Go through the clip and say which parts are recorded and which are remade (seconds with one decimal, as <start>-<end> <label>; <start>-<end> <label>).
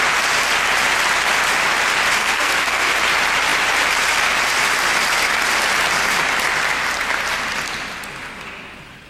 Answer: 0.0-2.2 recorded; 2.2-2.9 remade; 2.9-9.1 recorded